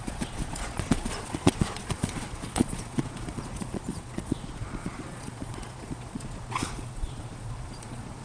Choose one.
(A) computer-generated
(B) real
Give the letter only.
A